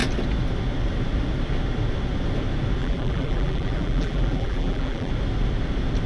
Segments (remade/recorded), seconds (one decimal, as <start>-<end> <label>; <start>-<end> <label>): 0.0-2.8 recorded; 2.8-5.1 remade; 5.1-6.1 recorded

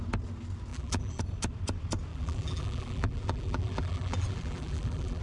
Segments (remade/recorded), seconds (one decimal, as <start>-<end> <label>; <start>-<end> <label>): 0.0-0.7 recorded; 0.7-1.2 remade; 1.2-2.1 recorded; 2.1-5.2 remade

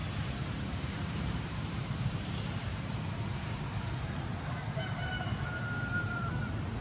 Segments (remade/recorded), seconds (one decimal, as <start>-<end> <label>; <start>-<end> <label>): 0.0-4.1 remade; 4.1-5.0 recorded; 5.0-6.3 remade; 6.3-6.8 recorded

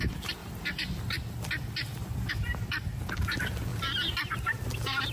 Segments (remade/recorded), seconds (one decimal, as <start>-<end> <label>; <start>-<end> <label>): 0.0-5.1 recorded

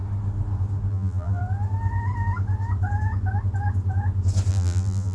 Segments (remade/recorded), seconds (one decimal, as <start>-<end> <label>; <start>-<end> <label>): 0.0-0.9 recorded; 0.9-1.4 remade; 1.4-4.5 recorded; 4.5-5.1 remade